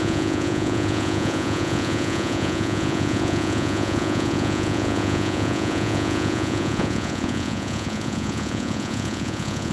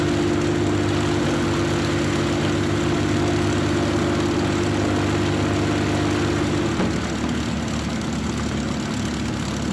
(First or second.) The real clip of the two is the second